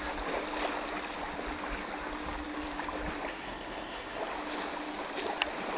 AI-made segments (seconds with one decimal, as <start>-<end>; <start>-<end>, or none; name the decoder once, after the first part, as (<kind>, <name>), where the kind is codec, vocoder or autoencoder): 3.3-4.2 (codec, SNAC)